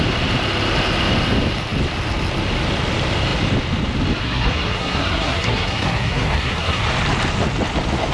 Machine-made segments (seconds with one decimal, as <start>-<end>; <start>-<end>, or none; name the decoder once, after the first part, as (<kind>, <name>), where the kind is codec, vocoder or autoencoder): 4.2-6.8 (codec, SNAC)